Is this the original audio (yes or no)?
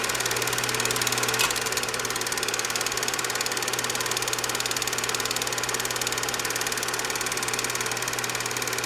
yes